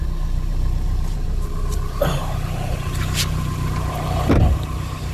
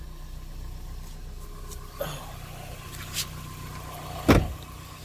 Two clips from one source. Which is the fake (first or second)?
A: first